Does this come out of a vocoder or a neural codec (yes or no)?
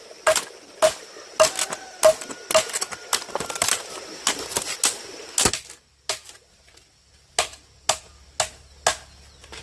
no